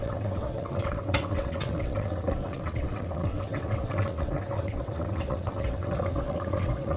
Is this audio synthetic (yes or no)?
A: yes